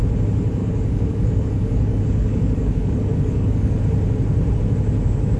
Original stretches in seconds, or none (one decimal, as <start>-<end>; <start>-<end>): 0.0-0.6; 3.8-5.4